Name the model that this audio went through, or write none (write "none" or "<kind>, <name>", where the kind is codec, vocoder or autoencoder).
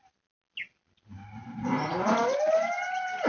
none